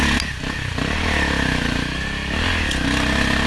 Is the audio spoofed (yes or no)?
no